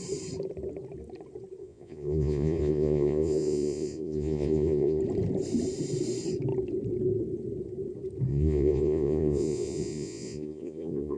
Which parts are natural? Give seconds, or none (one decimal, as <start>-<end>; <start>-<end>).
0.0-1.6; 5.0-8.3